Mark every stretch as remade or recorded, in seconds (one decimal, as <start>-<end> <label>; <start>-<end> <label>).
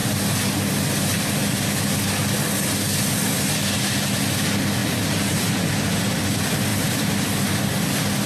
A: 0.0-4.8 recorded; 4.8-6.2 remade; 6.2-6.7 recorded; 6.7-7.3 remade; 7.3-8.3 recorded